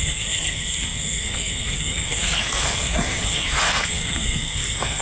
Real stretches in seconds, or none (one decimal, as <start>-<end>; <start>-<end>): none